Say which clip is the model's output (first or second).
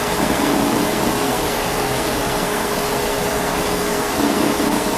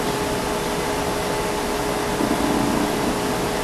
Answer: first